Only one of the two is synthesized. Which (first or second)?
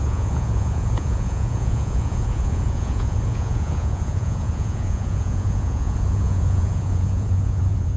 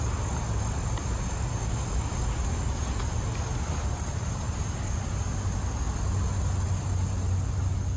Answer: first